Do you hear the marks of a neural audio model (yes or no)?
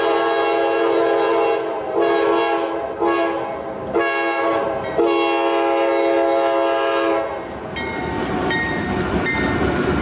no